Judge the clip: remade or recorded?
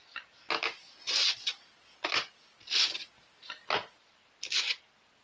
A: recorded